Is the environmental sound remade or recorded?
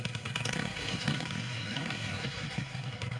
remade